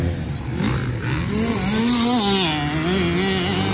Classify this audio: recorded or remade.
recorded